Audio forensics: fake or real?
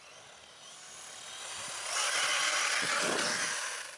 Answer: real